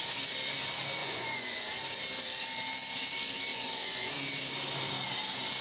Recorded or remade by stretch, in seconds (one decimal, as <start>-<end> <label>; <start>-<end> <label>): 0.0-1.0 recorded; 1.0-1.7 remade; 1.7-3.5 recorded; 3.5-4.1 remade; 4.1-5.6 recorded